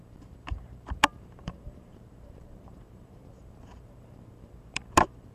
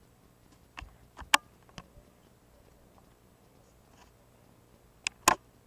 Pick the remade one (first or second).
first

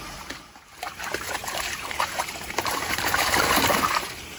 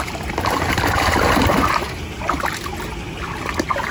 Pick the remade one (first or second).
first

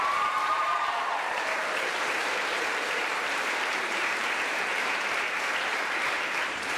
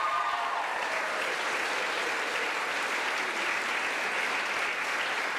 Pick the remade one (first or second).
first